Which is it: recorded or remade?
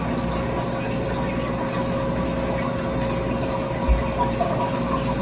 recorded